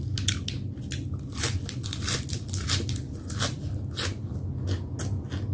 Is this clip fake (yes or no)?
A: no